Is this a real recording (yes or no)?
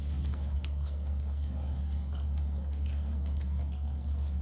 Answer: no